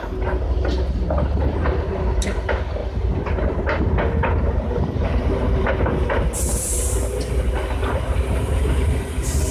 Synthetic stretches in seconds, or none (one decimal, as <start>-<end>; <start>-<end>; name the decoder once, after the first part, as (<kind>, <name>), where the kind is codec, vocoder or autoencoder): none